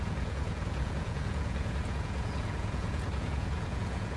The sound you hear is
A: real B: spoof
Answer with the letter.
B